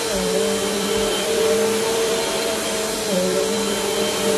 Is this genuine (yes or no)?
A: no